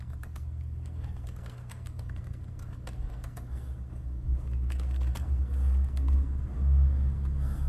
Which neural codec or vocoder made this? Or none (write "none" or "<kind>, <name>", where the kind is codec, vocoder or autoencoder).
codec, SNAC